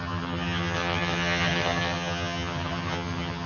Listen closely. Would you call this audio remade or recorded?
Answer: remade